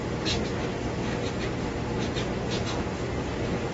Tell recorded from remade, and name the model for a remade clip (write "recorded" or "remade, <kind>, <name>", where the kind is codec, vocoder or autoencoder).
recorded